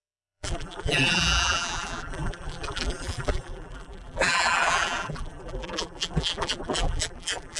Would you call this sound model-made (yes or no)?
yes